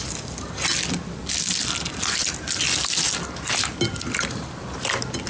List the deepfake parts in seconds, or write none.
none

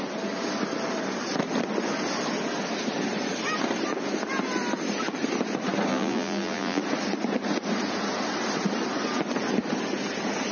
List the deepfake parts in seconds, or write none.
5.9-6.8 (vocoder, BigVGAN v2)

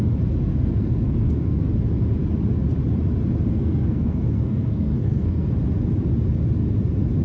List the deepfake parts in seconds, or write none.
0.5-1.7 (codec, SNAC); 3.5-5.5

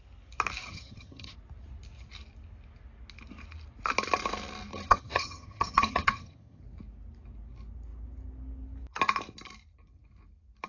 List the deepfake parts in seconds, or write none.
0.6-1.3 (vocoder, HiFi-GAN); 4.7-6.6

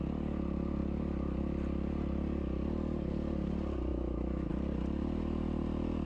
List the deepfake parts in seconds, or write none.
3.9-4.5 (autoencoder, DAC-VAE)